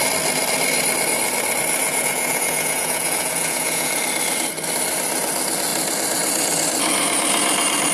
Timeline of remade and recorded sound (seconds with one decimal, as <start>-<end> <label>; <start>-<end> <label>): 0.0-1.8 recorded; 1.8-4.0 remade; 4.0-7.9 recorded